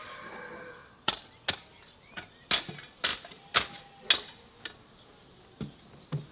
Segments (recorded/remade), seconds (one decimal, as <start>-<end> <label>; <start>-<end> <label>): 0.0-0.8 recorded; 0.8-1.3 remade; 1.3-6.3 recorded